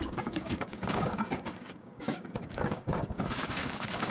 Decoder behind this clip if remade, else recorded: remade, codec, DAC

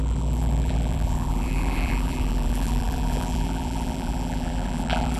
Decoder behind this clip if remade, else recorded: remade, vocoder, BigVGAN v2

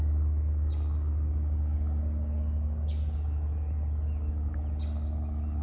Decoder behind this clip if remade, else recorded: recorded